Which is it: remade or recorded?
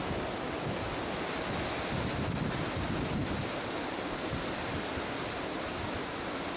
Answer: recorded